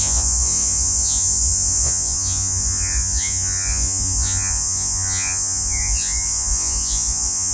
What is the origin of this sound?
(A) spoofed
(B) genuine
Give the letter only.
A